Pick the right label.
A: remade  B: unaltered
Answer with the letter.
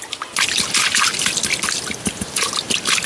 B